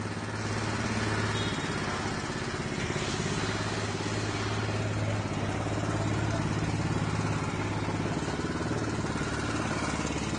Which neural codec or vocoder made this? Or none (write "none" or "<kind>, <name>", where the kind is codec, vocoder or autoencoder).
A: none